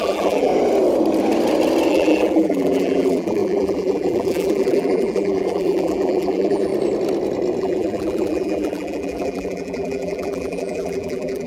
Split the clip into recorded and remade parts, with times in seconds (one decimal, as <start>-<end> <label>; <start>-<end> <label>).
0.0-0.5 remade; 0.5-1.9 recorded; 1.9-6.7 remade; 6.7-7.6 recorded; 7.6-11.5 remade